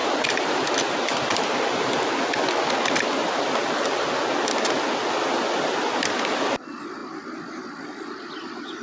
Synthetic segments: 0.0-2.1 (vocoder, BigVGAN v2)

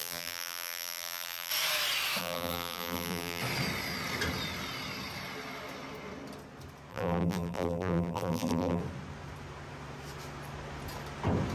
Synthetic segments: 0.0-1.5 (vocoder, BigVGAN v2); 2.2-3.4; 6.9-8.8

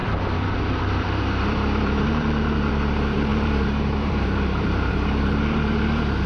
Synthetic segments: 0.0-6.3 (vocoder, BigVGAN v2)

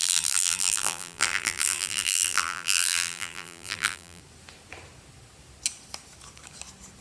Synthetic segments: 0.0-4.2 (vocoder, BigVGAN v2)

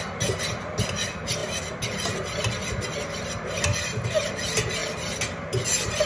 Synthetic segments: none

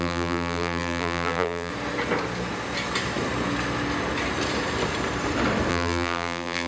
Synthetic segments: 0.0-1.7 (vocoder, BigVGAN v2); 5.7-6.7